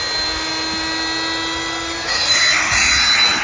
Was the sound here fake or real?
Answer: real